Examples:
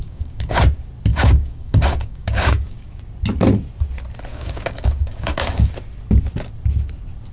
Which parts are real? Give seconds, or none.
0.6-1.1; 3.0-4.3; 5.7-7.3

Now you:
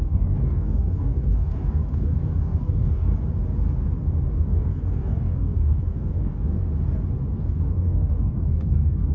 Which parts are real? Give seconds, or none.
3.1-4.3; 6.6-7.4

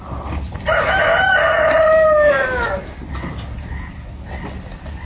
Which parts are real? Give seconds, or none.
0.0-5.1

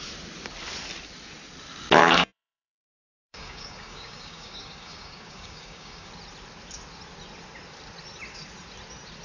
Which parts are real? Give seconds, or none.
0.0-2.0; 6.1-9.2